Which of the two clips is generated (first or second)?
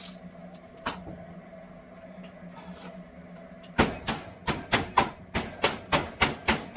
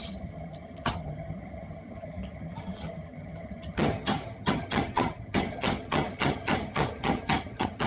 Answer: second